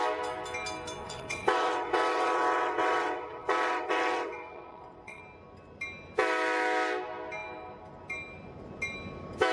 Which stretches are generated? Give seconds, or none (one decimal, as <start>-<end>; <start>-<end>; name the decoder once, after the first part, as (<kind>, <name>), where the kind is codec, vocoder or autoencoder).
1.0-5.2 (vocoder, WaveNeXt)